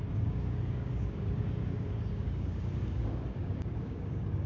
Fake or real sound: fake